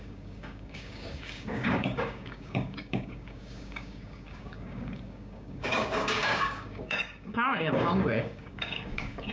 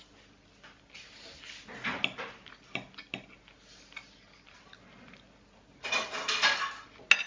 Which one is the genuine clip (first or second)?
second